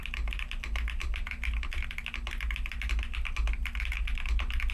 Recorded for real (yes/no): yes